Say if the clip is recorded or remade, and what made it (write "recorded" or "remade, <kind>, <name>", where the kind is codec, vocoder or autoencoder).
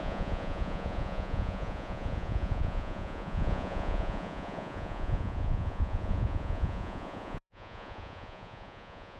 remade, vocoder, Vocos